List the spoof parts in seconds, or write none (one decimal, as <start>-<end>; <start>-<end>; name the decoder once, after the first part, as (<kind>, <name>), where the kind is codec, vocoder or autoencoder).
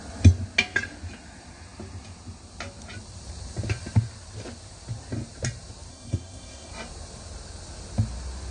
5.9-6.7 (codec, SNAC)